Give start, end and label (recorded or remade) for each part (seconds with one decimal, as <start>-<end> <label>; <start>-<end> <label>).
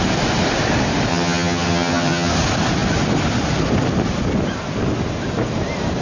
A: 0.0-1.1 recorded; 1.1-2.3 remade; 2.3-6.0 recorded